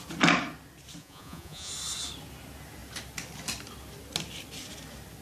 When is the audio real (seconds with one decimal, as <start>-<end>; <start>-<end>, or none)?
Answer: 0.0-1.0; 1.7-5.2